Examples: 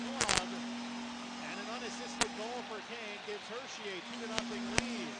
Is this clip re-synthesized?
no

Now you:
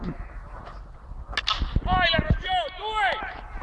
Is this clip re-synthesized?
no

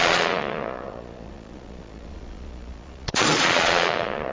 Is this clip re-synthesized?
yes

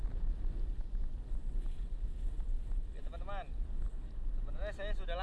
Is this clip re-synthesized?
no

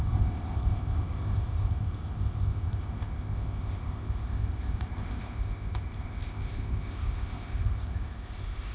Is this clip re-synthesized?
yes